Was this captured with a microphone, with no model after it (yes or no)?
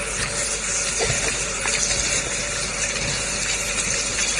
yes